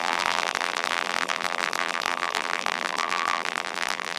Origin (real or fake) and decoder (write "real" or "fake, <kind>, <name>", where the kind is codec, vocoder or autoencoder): fake, vocoder, BigVGAN v2